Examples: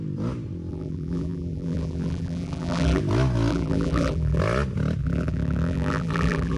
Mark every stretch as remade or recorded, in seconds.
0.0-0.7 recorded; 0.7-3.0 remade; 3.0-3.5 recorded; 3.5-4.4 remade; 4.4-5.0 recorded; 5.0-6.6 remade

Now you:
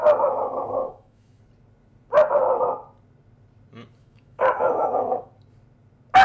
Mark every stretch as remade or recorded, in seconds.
0.0-0.8 recorded; 0.8-1.4 remade; 1.4-4.0 recorded; 4.0-5.3 remade; 5.3-6.2 recorded

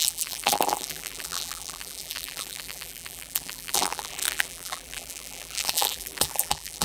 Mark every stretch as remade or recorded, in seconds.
0.0-6.8 remade

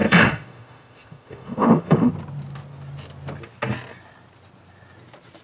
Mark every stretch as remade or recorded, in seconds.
0.0-2.1 remade; 2.1-5.4 recorded

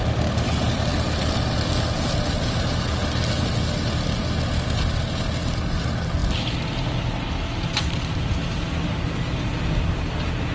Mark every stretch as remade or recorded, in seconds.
0.0-10.5 recorded

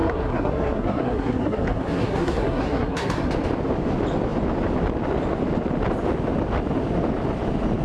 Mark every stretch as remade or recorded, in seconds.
0.0-3.3 remade; 3.3-7.8 recorded

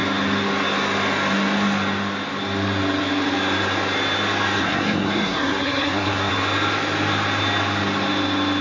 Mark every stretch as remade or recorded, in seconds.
0.0-4.6 recorded; 4.6-6.3 remade; 6.3-8.6 recorded

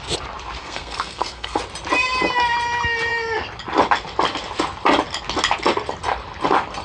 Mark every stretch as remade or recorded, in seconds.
0.0-0.6 recorded; 0.6-1.6 remade; 1.6-6.8 recorded